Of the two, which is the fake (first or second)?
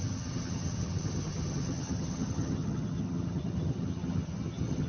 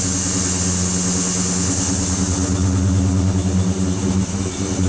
first